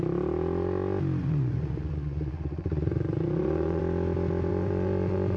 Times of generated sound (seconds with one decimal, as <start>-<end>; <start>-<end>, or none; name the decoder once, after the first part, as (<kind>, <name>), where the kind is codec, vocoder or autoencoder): 1.2-3.8 (vocoder, Vocos); 4.5-5.4